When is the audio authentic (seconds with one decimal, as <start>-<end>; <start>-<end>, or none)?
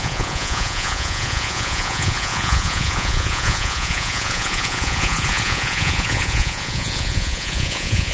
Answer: none